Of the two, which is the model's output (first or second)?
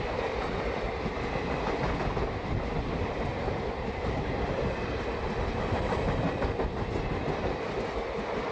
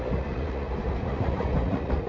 second